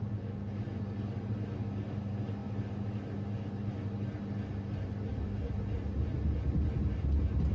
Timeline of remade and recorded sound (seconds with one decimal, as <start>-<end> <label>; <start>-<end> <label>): 0.0-7.5 recorded